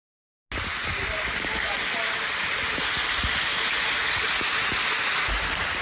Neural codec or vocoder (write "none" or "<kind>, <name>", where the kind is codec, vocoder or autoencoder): none